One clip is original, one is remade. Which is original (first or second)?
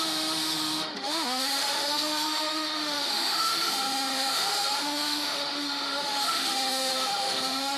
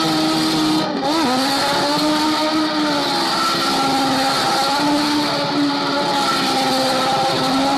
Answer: second